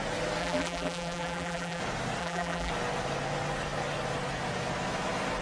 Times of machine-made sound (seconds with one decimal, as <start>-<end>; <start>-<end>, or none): 0.4-1.8; 2.2-2.7